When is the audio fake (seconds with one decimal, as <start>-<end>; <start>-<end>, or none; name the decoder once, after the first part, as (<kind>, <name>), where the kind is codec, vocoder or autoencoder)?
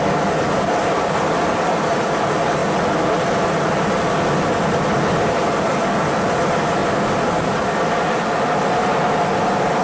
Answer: none